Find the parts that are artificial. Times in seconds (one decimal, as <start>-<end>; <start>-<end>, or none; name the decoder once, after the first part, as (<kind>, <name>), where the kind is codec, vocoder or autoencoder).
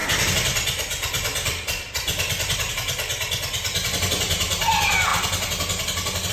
0.0-2.7 (vocoder, BigVGAN v2)